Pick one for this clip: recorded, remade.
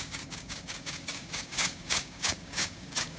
remade